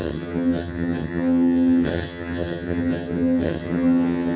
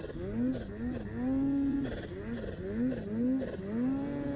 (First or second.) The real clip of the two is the second